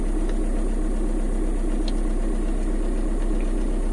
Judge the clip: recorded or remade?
recorded